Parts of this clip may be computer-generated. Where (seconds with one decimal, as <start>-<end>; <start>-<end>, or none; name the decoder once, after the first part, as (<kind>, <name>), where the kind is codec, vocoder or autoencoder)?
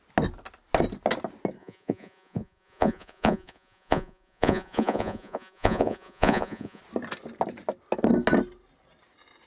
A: 1.6-6.8 (vocoder, Vocos)